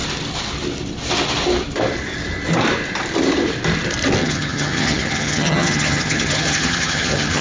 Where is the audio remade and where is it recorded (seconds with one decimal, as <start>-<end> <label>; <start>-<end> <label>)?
0.0-4.2 recorded; 4.2-7.4 remade